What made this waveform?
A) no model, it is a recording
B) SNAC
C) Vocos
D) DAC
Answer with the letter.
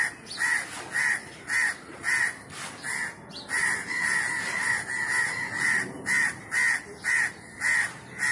A